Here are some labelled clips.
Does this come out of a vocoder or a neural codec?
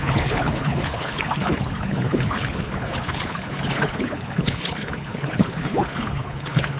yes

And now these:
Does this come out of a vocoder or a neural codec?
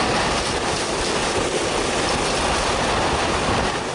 no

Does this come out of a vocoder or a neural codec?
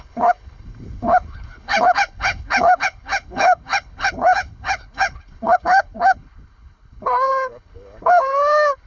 yes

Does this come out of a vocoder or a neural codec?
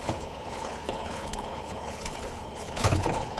yes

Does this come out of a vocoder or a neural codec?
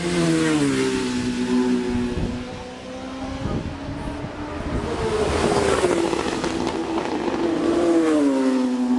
no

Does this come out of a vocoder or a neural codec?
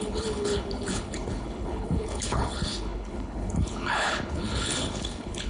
yes